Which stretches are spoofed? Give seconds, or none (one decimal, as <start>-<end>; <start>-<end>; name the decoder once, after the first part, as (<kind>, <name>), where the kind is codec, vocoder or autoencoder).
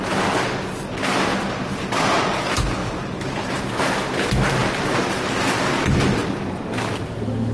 1.3-2.3 (vocoder, BigVGAN v2); 2.8-3.8